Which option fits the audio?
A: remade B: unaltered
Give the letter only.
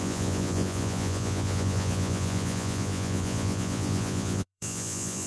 A